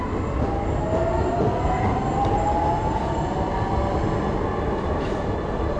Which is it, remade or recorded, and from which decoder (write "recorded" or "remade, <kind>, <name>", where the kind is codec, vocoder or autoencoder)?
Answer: recorded